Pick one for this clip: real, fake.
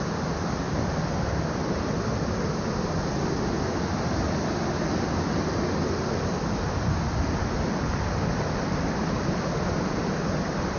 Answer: real